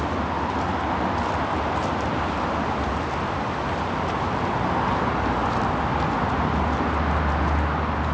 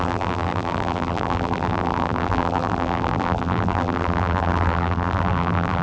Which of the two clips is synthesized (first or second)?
second